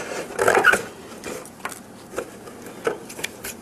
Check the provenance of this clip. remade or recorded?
recorded